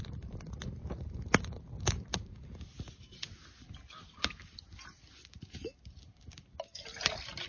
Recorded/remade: recorded